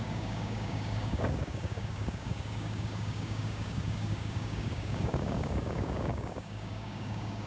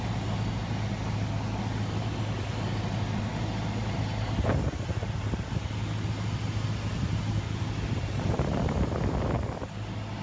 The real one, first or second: second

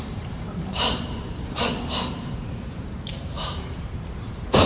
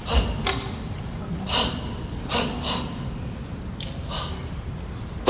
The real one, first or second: second